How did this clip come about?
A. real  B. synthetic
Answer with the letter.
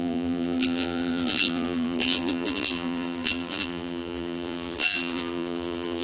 B